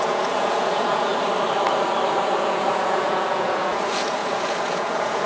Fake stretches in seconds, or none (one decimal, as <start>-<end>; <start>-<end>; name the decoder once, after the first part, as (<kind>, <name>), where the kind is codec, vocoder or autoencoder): 0.0-1.1 (vocoder, Vocos); 2.2-5.3